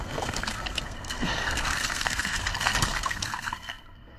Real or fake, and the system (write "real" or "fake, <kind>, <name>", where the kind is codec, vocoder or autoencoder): fake, codec, SNAC